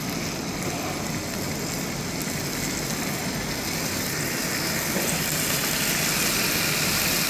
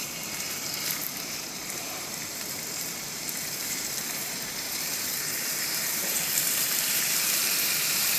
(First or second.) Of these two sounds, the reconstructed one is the second